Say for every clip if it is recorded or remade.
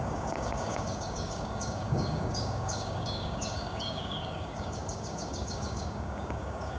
remade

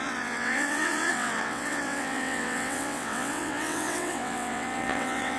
remade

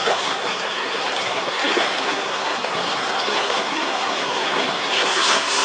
remade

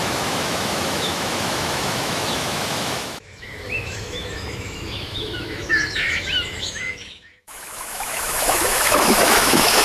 remade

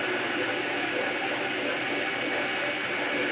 recorded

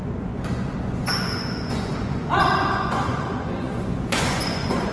remade